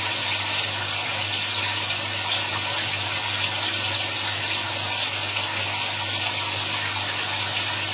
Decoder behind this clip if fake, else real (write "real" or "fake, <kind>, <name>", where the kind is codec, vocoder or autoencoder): real